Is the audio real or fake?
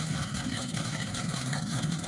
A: fake